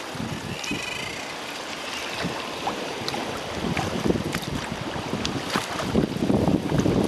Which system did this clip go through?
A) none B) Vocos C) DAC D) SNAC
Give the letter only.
A